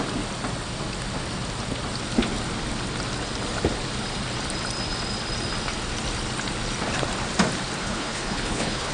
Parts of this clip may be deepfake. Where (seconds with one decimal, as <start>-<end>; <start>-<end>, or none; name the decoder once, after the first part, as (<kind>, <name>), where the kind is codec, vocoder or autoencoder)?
7.8-8.9 (codec, HILCodec)